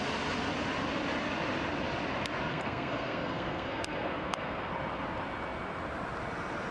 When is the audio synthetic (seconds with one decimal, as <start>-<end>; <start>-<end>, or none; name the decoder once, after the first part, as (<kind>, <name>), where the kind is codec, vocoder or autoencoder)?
2.5-4.7 (codec, SNAC)

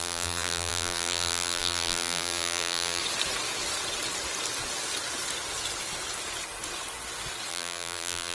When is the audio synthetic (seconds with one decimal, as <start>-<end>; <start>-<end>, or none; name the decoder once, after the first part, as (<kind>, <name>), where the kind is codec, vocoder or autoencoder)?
0.0-3.0 (vocoder, BigVGAN v2); 7.5-8.3

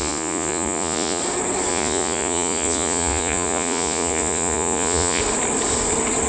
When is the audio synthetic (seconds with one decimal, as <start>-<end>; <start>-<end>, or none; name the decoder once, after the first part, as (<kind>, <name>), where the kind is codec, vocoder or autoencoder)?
0.0-1.2 (vocoder, Vocos); 1.7-5.2

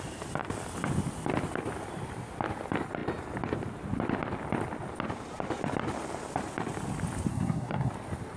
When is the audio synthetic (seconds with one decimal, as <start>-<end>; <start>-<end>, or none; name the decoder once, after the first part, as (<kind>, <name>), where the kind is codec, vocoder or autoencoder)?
7.3-7.9 (codec, SNAC)

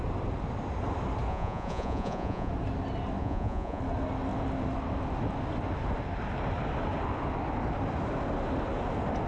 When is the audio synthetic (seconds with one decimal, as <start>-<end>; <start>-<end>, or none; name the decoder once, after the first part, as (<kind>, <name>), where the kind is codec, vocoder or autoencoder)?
1.3-2.5 (vocoder, Vocos); 3.2-3.8

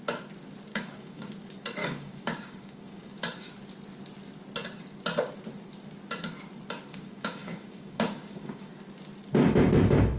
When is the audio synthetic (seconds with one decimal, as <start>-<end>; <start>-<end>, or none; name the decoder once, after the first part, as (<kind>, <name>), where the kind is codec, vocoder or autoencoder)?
0.7-1.3 (codec, DAC); 1.8-3.1; 6.9-8.7

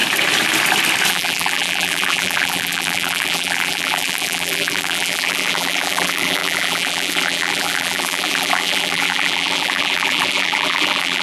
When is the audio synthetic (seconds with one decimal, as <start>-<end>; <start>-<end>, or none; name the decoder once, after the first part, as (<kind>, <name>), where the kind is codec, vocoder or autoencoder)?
1.1-11.2 (vocoder, BigVGAN v2)